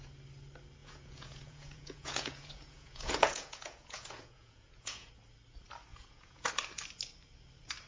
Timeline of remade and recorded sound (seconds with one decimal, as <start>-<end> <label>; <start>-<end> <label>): 0.0-0.8 recorded; 0.8-5.1 remade; 5.1-5.9 recorded; 5.9-6.5 remade; 6.5-7.9 recorded